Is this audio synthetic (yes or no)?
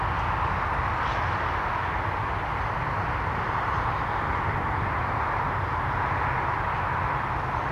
no